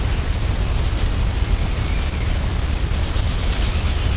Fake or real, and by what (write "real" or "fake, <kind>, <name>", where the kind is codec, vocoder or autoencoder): real